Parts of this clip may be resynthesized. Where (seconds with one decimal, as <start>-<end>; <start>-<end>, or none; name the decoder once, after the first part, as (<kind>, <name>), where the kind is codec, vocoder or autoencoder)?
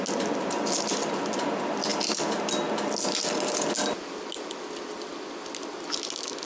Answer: none